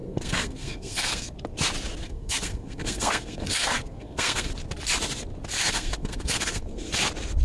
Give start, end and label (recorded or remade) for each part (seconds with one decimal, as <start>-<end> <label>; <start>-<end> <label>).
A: 0.0-1.3 remade; 1.3-2.0 recorded; 2.0-4.5 remade; 4.5-5.5 recorded; 5.5-6.9 remade; 6.9-7.4 recorded